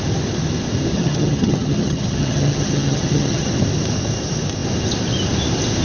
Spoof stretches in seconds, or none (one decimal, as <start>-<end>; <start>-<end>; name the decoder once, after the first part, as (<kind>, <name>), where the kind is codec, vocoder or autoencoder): 0.9-3.5 (vocoder, HiFi-GAN)